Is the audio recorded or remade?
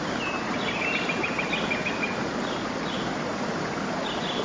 recorded